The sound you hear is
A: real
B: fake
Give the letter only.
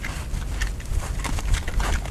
A